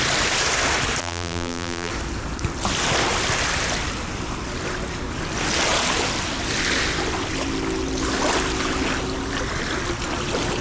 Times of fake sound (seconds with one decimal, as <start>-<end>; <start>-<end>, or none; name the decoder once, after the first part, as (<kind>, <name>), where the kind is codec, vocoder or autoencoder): 1.0-1.9 (vocoder, BigVGAN v2)